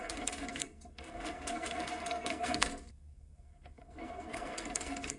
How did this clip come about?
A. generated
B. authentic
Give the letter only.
A